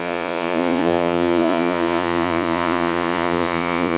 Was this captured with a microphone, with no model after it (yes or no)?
no